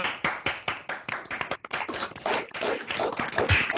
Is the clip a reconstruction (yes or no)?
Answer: no